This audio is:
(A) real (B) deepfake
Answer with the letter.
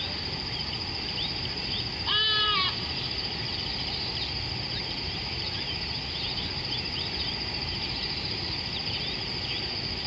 B